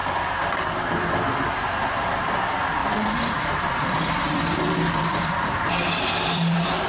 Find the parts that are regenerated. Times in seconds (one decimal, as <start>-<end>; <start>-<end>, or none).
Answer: 2.8-5.7